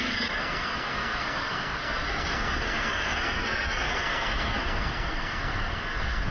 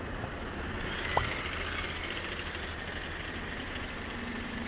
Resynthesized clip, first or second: first